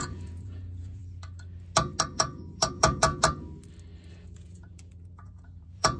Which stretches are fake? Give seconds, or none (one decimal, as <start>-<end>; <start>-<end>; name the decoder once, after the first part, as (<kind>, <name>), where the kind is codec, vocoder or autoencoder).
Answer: 0.0-1.0 (vocoder, Vocos); 2.1-3.1; 4.1-6.0